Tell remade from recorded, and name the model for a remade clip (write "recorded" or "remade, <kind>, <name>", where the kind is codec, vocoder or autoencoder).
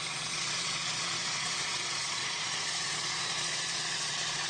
remade, vocoder, Vocos